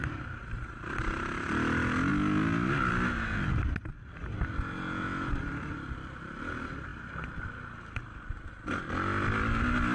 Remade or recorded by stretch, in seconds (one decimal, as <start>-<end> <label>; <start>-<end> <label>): 0.0-9.9 recorded

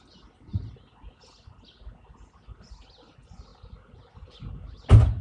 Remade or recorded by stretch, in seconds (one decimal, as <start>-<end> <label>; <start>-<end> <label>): 0.0-5.2 recorded

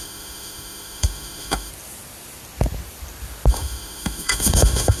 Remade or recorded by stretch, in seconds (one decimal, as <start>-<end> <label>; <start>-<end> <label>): 0.0-1.7 remade; 1.7-3.5 recorded; 3.5-5.0 remade

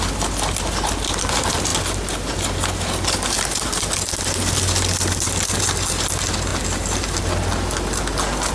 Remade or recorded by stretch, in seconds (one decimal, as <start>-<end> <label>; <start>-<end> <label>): 0.0-8.5 recorded